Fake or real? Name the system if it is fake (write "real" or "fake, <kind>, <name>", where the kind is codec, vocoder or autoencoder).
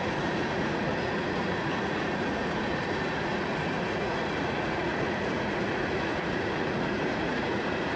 fake, vocoder, Vocos